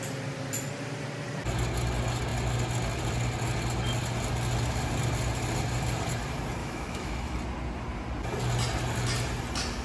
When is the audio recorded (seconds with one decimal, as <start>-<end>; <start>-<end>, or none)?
0.0-6.6; 7.4-9.8